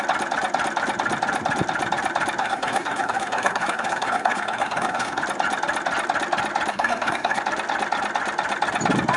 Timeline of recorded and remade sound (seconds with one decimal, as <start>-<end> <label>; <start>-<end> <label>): 0.0-2.4 recorded; 2.4-5.2 remade; 5.2-6.7 recorded; 6.7-7.4 remade; 7.4-9.2 recorded

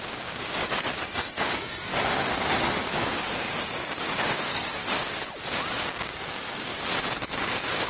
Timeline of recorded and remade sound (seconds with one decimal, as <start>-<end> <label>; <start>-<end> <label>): 0.0-1.9 remade; 1.9-3.3 recorded; 3.3-4.8 remade; 4.8-5.9 recorded; 5.9-6.7 remade; 6.7-7.2 recorded; 7.2-7.9 remade

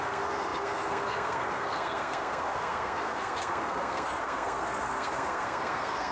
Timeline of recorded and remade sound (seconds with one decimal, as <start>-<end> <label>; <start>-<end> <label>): 0.0-6.1 remade

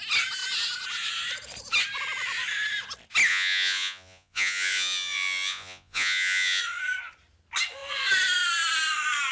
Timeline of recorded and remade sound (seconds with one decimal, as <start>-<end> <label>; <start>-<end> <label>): 0.0-3.3 recorded; 3.3-6.6 remade; 6.6-9.3 recorded

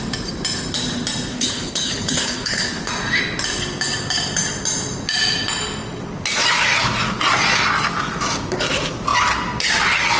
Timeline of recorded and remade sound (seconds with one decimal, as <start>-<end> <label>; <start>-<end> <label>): 0.0-1.3 recorded; 1.3-2.9 remade; 2.9-10.2 recorded

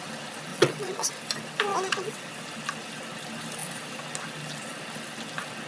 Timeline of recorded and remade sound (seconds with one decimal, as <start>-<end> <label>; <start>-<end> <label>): 0.0-0.5 recorded; 0.5-1.1 remade; 1.1-1.7 recorded; 1.7-2.3 remade; 2.3-5.7 recorded

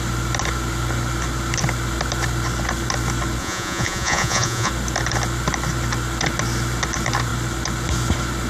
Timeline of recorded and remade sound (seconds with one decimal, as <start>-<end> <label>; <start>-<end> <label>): 0.0-3.4 recorded; 3.4-4.7 remade; 4.7-8.5 recorded